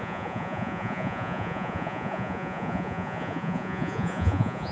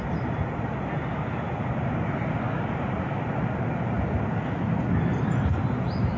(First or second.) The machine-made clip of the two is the first